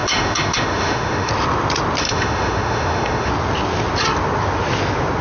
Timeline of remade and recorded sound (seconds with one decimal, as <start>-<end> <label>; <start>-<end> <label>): 0.0-1.3 remade; 1.3-2.0 recorded; 2.0-3.3 remade; 3.3-5.2 recorded